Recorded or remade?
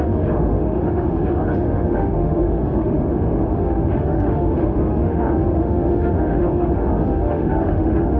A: remade